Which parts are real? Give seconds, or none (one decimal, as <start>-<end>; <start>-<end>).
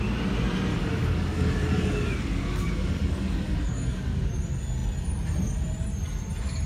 0.0-0.7; 4.3-6.7